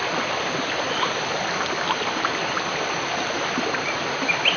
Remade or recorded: recorded